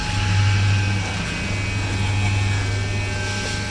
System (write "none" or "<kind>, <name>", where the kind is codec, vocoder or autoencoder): none